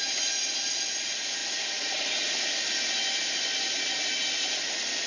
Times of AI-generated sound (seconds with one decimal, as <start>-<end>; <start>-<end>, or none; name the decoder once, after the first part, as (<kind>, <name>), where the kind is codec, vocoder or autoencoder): none